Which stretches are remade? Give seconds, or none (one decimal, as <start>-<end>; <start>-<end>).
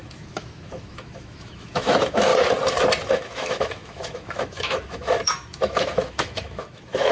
0.0-2.3; 3.1-7.1